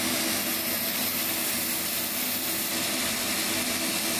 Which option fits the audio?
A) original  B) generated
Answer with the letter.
A